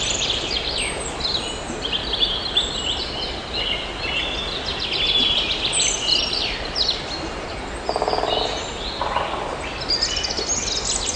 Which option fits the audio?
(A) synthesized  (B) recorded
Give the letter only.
B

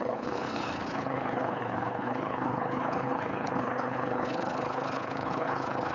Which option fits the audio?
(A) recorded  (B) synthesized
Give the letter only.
B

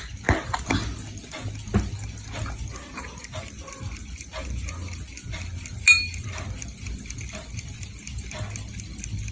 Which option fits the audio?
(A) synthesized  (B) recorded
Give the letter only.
B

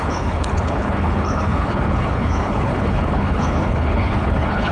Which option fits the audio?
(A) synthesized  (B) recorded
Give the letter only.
A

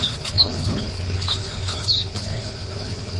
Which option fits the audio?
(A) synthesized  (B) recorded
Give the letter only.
A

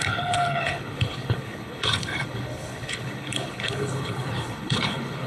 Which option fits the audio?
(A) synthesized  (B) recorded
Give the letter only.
A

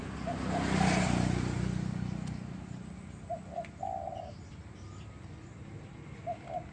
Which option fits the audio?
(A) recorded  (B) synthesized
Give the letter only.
A